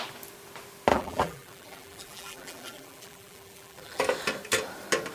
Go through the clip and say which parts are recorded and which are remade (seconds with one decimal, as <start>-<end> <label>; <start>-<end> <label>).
0.0-0.9 recorded; 0.9-4.0 remade; 4.0-5.1 recorded